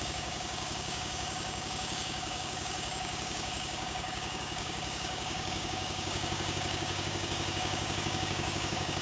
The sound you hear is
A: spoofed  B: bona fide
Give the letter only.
A